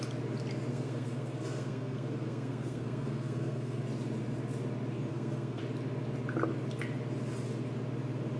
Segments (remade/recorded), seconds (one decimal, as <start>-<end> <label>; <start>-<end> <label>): 0.0-0.7 recorded; 0.7-3.8 remade; 3.8-5.1 recorded; 5.1-5.6 remade; 5.6-8.4 recorded